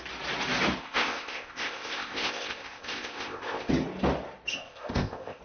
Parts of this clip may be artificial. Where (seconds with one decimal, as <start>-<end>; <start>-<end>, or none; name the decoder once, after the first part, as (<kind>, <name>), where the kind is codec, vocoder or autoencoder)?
0.8-3.7 (codec, ZipCodec); 4.5-5.4